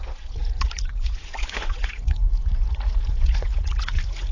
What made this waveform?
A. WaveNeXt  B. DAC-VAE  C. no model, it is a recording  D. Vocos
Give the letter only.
D